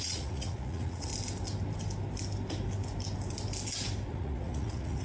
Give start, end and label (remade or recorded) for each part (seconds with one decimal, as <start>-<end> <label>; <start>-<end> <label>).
0.0-1.1 remade; 1.1-4.1 recorded; 4.1-5.0 remade